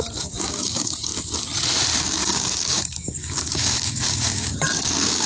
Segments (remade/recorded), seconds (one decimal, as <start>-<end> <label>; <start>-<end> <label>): 0.0-1.1 remade; 1.1-2.0 recorded; 2.0-5.3 remade